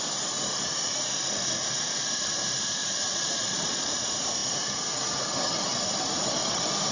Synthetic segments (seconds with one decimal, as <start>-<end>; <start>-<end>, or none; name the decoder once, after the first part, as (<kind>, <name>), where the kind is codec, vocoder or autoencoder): 2.8-3.9 (vocoder, Vocos)